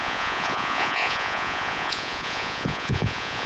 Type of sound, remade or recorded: remade